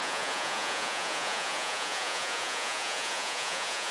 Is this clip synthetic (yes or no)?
yes